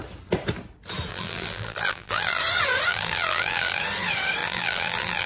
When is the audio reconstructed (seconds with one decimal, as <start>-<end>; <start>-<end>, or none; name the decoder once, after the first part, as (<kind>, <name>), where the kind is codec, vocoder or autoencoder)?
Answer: 1.1-2.4 (vocoder, BigVGAN v2); 2.9-3.8; 4.4-5.3